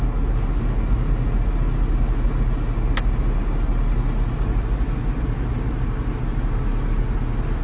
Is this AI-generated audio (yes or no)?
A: no